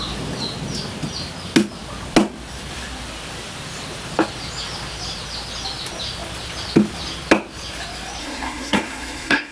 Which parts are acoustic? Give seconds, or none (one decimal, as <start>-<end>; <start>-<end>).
0.0-8.2